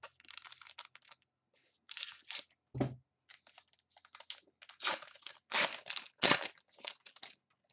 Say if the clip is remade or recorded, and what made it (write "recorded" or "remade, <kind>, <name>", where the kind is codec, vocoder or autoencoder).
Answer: recorded